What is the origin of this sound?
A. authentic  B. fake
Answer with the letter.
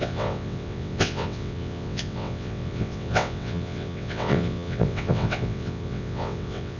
B